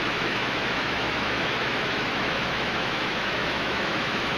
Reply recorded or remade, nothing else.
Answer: remade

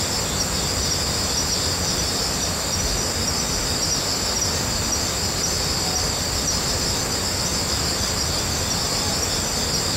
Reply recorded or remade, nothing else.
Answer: recorded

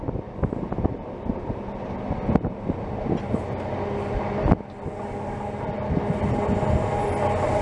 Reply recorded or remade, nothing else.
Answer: recorded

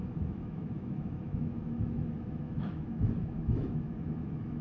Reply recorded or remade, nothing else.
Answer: remade